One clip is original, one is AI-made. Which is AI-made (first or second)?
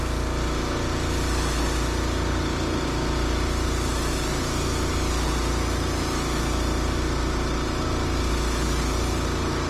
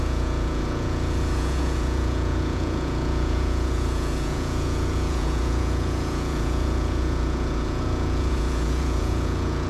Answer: second